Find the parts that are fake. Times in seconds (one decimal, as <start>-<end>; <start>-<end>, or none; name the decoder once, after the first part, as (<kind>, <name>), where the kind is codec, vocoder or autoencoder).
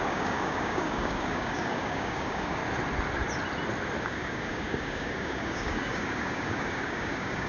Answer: 0.0-2.6 (codec, DAC); 4.0-7.5